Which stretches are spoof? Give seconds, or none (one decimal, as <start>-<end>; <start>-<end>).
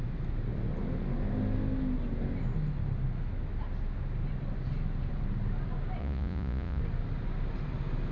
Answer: 6.0-6.8